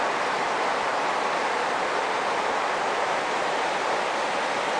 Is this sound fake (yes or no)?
no